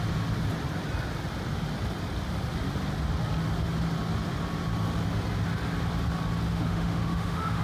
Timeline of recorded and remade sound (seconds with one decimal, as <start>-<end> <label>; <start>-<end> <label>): 0.0-6.5 recorded; 6.5-7.6 remade